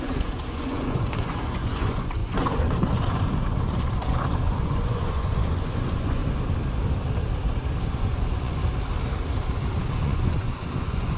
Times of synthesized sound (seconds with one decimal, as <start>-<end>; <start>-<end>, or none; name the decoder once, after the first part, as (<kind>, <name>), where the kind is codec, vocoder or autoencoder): 0.0-6.2 (vocoder, Vocos); 7.8-8.6; 9.8-11.2